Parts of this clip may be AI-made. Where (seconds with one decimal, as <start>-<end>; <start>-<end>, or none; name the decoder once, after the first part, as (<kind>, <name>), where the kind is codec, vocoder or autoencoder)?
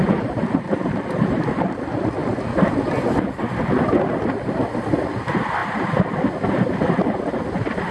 0.0-7.9 (vocoder, BigVGAN v2)